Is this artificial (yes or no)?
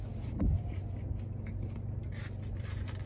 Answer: no